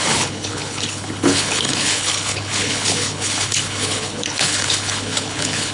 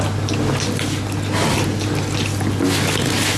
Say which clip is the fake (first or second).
first